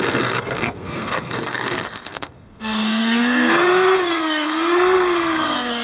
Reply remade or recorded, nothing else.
remade